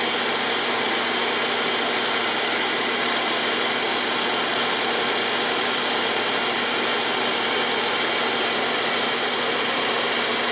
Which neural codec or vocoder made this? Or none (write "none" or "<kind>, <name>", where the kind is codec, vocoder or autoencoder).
none